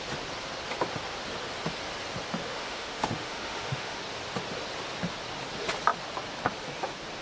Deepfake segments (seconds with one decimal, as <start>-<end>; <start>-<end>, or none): 2.4-4.0